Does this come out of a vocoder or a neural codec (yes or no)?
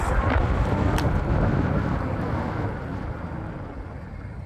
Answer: no